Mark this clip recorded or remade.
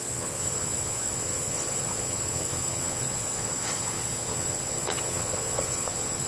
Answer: remade